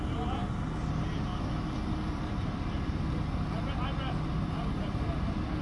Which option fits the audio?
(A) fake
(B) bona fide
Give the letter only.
B